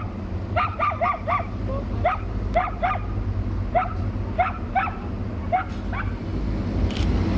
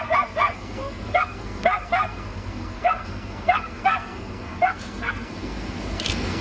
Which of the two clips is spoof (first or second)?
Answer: second